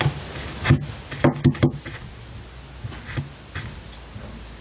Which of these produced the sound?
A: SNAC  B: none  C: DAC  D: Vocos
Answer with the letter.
B